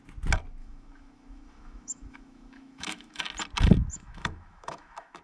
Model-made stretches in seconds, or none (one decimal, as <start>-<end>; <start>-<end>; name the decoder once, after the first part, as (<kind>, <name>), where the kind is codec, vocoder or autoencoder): 0.6-3.2 (autoencoder, DAC-VAE); 3.9-5.2

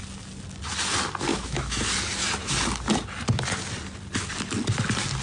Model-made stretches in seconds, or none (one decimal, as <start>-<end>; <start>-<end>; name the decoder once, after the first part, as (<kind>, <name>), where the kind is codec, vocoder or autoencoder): 1.3-1.8 (autoencoder, DAC-VAE)

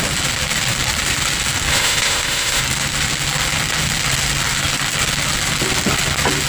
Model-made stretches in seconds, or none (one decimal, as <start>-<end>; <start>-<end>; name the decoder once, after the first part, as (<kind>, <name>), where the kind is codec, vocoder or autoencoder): 1.7-2.6 (autoencoder, DAC-VAE)

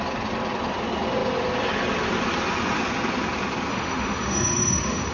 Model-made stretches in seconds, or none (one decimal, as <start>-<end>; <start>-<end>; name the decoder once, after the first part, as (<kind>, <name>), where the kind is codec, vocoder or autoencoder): 3.7-5.1 (autoencoder, DAC-VAE)

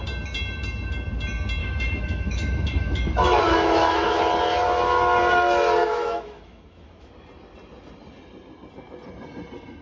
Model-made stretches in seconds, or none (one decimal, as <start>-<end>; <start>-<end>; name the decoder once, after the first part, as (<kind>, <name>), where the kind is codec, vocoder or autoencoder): 1.6-4.2 (autoencoder, DAC-VAE); 5.8-7.1

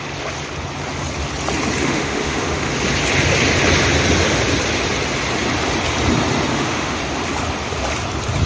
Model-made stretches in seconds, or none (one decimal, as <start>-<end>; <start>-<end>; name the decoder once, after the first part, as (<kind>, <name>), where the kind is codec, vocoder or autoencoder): 1.8-2.7 (autoencoder, DAC-VAE); 6.5-7.0

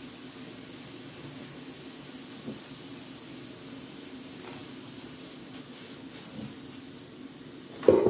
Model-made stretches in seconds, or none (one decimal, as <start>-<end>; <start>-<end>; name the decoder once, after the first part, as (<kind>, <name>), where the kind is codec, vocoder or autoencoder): none

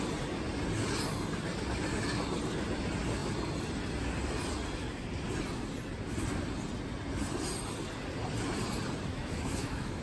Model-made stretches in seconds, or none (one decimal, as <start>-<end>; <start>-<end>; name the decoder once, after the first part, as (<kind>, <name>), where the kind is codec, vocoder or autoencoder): 9.1-10.0 (autoencoder, DAC-VAE)